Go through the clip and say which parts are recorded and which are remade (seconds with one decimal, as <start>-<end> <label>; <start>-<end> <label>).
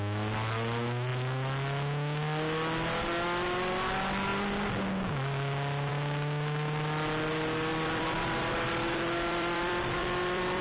0.0-7.7 recorded; 7.7-10.6 remade